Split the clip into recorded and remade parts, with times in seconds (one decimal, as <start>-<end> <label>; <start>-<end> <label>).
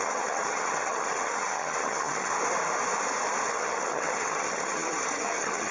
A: 0.0-2.3 remade; 2.3-3.5 recorded; 3.5-5.7 remade